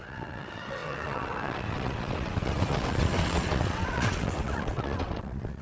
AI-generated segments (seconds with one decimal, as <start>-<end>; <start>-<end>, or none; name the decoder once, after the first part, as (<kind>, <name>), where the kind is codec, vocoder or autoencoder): 0.0-5.6 (vocoder, WaveNeXt)